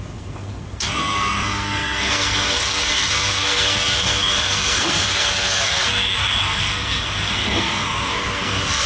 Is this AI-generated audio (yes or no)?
yes